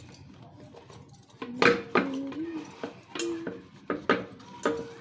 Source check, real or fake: real